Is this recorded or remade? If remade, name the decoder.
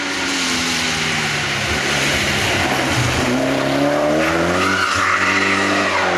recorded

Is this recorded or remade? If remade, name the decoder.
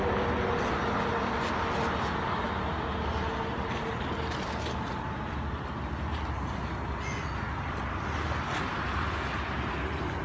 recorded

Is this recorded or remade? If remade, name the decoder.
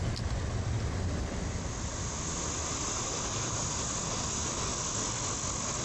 recorded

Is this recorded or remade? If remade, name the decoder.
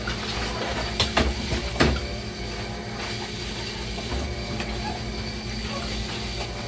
recorded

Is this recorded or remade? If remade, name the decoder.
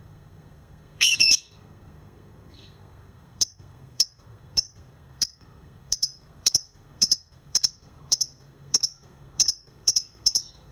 remade, codec, SNAC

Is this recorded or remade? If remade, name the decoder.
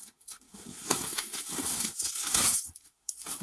remade, codec, SNAC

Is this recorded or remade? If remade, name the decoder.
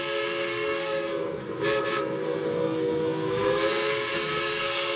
remade, codec, SNAC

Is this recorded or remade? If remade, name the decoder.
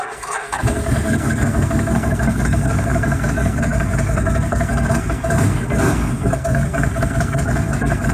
remade, codec, SNAC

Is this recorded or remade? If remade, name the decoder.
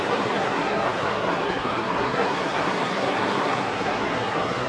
remade, codec, SNAC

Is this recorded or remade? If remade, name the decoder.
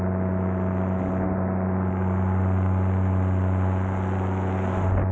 recorded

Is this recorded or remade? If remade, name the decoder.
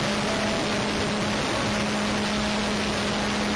recorded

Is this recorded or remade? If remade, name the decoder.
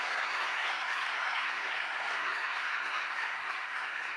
remade, codec, SNAC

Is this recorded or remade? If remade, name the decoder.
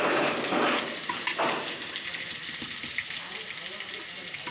recorded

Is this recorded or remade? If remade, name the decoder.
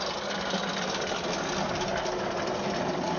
recorded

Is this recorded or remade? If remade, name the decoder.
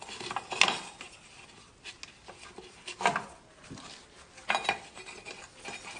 recorded